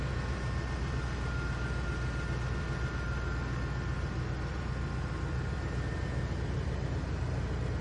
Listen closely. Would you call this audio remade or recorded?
recorded